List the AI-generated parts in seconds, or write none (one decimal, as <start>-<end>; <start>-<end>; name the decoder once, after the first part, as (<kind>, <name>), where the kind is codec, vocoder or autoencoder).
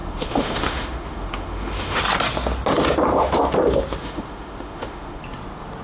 0.0-2.0 (autoencoder, DAC-VAE); 4.0-5.2